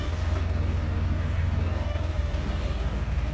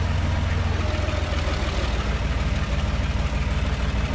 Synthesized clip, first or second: first